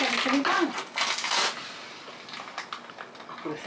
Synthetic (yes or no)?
no